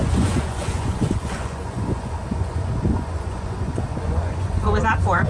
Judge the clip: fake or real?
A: fake